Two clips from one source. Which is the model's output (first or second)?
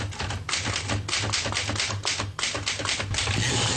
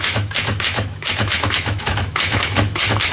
second